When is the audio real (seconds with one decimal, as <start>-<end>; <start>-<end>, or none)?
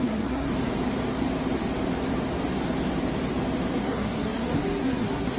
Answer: 0.5-3.7